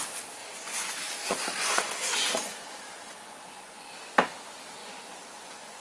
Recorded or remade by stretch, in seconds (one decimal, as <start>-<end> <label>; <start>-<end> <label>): 0.0-0.4 recorded; 0.4-3.9 remade; 3.9-4.8 recorded; 4.8-5.8 remade